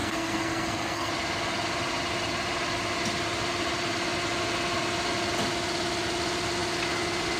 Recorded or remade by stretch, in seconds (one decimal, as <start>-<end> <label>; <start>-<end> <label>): 0.0-1.1 remade; 1.1-7.4 recorded